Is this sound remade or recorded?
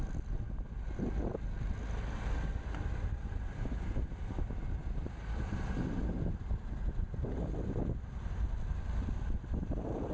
recorded